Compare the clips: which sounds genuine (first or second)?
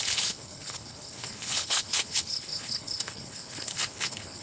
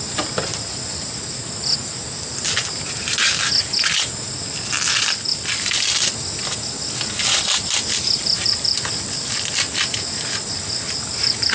second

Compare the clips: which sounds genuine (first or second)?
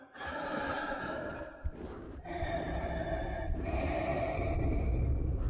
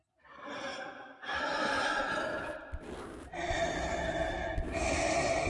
second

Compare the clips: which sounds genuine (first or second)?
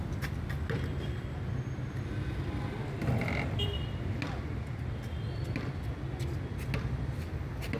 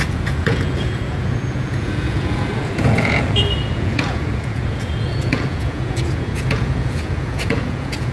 first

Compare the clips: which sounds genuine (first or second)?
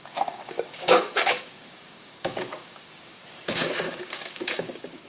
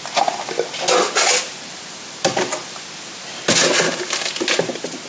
second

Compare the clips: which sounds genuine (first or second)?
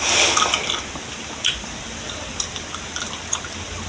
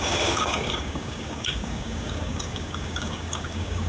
first